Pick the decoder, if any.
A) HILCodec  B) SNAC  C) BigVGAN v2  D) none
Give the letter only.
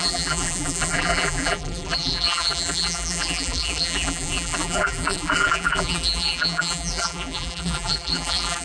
C